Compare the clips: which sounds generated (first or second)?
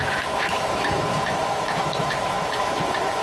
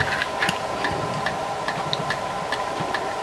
first